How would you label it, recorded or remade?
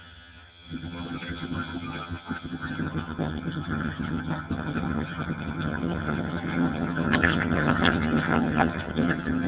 remade